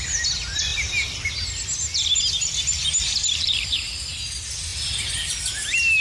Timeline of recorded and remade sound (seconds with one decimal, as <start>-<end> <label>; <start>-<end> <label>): 0.0-6.0 recorded